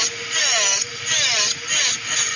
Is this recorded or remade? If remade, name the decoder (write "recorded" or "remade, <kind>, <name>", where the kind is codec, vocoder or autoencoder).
recorded